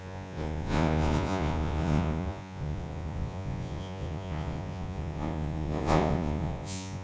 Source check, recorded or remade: remade